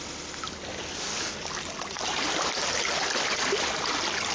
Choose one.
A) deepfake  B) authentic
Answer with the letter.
B